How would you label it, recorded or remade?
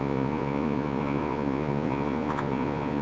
remade